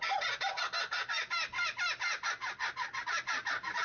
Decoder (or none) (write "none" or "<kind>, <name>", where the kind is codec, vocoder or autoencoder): none